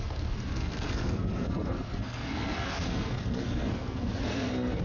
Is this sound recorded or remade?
remade